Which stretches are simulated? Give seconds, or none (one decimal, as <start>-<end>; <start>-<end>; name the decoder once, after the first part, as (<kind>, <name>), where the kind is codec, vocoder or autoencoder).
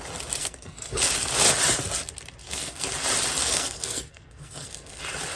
0.4-1.1 (codec, SNAC); 2.4-2.9; 3.4-5.0